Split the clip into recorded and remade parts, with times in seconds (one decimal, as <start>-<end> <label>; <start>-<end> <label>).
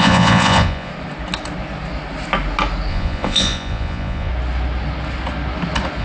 0.0-0.9 remade; 0.9-2.9 recorded; 2.9-4.3 remade; 4.3-6.0 recorded